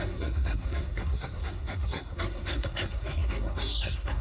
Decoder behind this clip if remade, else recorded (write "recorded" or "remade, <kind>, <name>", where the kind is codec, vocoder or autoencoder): remade, codec, SNAC